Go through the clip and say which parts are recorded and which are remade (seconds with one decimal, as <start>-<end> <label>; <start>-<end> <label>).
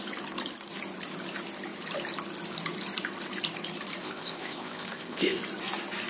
0.0-4.0 recorded; 4.0-5.4 remade; 5.4-6.1 recorded